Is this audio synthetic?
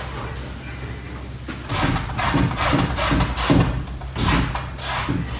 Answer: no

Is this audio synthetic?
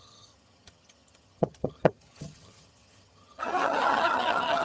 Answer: yes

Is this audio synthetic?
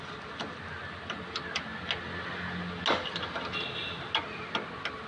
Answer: no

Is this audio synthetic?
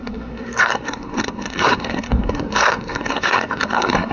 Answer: yes